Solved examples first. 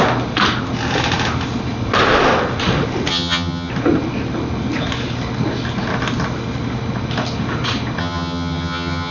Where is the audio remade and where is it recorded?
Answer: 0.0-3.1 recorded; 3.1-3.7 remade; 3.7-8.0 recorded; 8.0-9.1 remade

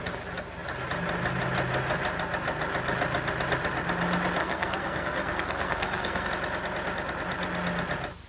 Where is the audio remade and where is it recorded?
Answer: 0.0-4.4 recorded; 4.4-6.3 remade; 6.3-8.3 recorded

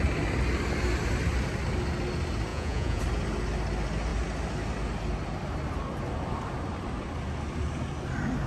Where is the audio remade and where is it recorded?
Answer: 0.0-2.5 recorded; 2.5-3.0 remade; 3.0-8.5 recorded

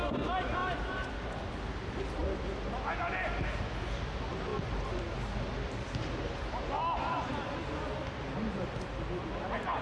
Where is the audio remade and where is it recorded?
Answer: 0.0-9.8 recorded

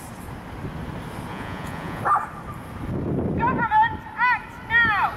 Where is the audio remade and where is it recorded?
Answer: 0.0-1.3 recorded; 1.3-2.0 remade; 2.0-5.2 recorded

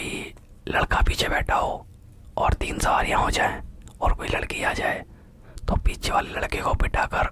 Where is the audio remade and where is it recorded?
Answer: 0.0-5.6 recorded; 5.6-6.3 remade; 6.3-7.3 recorded

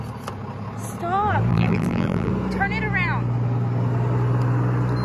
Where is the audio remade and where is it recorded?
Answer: 0.0-1.5 recorded; 1.5-2.3 remade; 2.3-5.0 recorded